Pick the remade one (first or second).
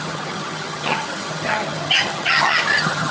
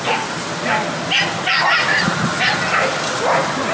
first